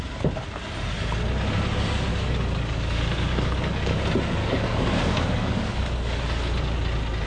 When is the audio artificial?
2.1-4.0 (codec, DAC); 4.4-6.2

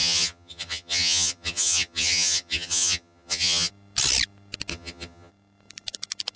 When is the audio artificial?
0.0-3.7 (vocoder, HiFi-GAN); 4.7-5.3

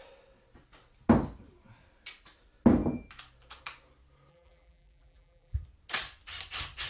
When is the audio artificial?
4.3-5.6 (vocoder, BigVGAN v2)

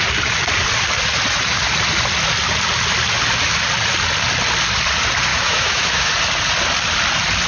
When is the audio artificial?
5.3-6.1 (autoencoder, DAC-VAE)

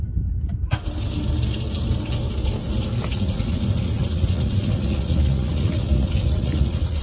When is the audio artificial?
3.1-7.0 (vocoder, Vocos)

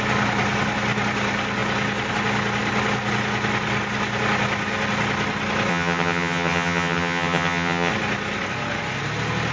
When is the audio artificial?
5.7-7.9 (vocoder, HiFi-GAN)

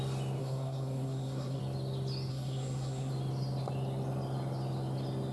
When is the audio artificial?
0.4-1.6 (codec, SNAC); 2.3-3.1

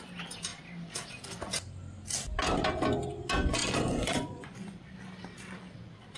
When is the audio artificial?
3.6-4.8 (vocoder, Vocos)